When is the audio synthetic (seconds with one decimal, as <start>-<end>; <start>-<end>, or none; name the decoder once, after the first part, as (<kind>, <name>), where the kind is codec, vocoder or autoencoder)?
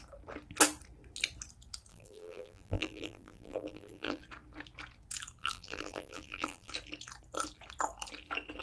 1.9-4.2 (vocoder, BigVGAN v2); 5.4-6.7